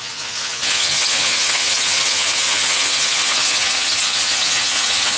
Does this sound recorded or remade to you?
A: remade